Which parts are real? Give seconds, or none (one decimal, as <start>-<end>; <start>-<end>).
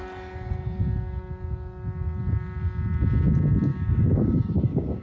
0.0-3.7